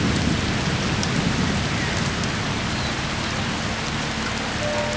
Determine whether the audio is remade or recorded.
recorded